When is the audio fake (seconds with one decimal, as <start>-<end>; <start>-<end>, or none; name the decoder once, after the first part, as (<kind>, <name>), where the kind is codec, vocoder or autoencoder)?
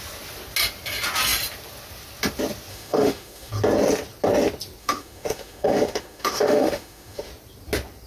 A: 2.7-3.5 (autoencoder, DAC-VAE); 4.8-7.3